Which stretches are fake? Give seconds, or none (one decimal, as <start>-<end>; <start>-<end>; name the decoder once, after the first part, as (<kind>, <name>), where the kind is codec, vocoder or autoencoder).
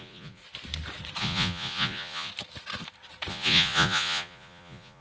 0.0-0.4 (vocoder, Vocos); 1.2-2.3; 3.3-5.0